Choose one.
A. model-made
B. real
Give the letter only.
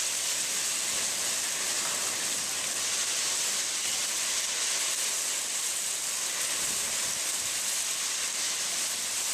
B